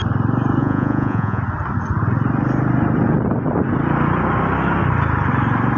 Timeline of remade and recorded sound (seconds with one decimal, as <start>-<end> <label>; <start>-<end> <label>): 0.0-0.6 recorded; 0.6-1.4 remade; 1.4-5.8 recorded